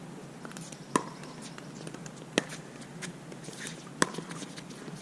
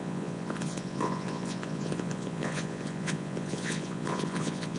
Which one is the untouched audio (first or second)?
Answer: first